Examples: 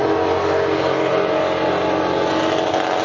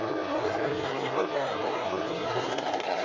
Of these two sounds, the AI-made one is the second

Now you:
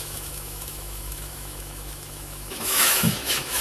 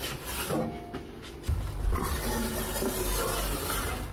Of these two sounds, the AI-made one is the first